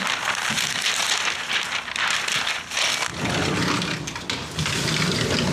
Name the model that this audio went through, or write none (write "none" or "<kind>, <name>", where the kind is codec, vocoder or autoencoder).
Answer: none